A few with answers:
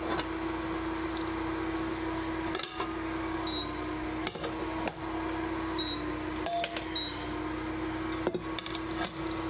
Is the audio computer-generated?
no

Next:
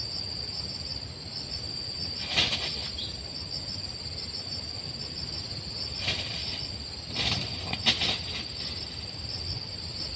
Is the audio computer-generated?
no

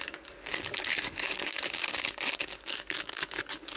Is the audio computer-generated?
yes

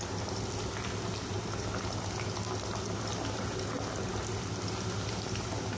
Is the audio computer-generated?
no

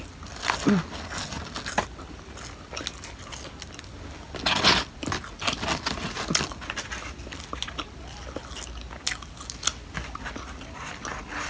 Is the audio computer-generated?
no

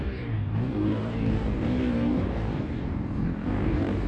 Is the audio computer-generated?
yes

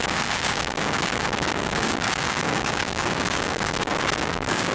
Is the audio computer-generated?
yes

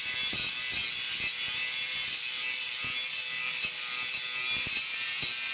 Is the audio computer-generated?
no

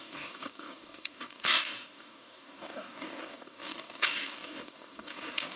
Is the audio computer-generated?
yes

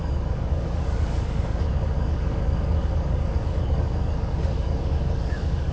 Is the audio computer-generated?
yes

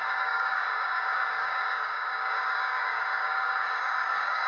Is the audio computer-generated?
yes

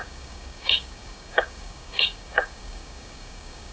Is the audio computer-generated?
yes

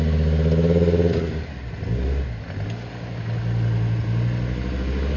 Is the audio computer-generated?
no